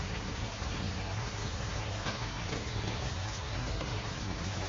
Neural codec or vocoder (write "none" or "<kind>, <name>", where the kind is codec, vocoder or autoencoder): codec, SNAC